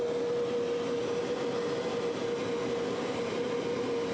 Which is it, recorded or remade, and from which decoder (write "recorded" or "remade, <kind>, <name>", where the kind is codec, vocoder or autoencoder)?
recorded